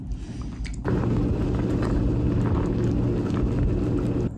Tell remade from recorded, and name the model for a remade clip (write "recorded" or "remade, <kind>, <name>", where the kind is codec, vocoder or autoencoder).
recorded